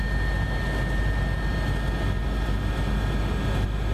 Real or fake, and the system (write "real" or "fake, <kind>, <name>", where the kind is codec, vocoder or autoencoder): real